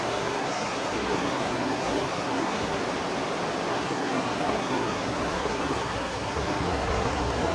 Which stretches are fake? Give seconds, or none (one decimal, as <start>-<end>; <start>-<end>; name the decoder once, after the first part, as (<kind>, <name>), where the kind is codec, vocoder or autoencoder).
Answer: 0.0-2.8 (codec, SNAC); 3.7-7.5